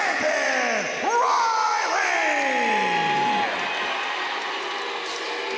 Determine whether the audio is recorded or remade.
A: recorded